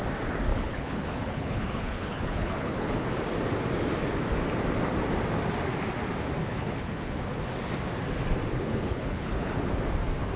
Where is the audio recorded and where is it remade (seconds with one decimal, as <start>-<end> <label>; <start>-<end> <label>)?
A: 0.0-0.5 recorded; 0.5-3.2 remade; 3.2-6.4 recorded; 6.4-7.2 remade; 7.2-8.5 recorded; 8.5-9.5 remade; 9.5-10.4 recorded